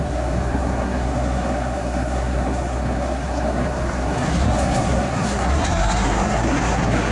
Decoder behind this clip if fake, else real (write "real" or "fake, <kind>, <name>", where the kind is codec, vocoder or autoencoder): fake, codec, SNAC